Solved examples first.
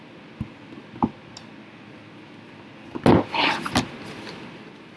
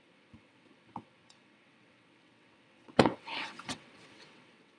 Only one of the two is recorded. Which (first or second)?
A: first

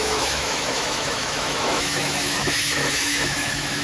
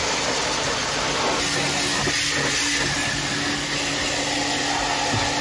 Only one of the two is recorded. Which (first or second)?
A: second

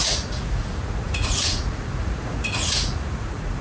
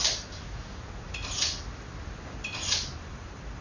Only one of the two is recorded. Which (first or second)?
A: second